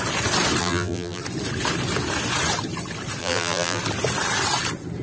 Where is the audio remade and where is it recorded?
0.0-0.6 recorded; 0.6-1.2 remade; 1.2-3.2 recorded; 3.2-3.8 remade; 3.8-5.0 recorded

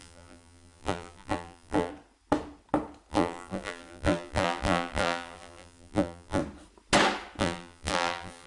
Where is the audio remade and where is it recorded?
0.0-1.9 remade; 1.9-3.1 recorded; 3.1-6.4 remade; 6.4-7.4 recorded; 7.4-8.5 remade

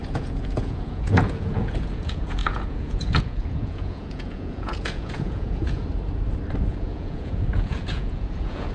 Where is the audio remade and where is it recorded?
0.0-5.8 remade; 5.8-6.7 recorded; 6.7-8.7 remade

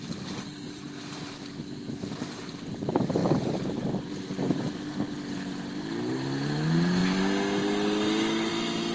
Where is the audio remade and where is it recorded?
0.0-8.9 recorded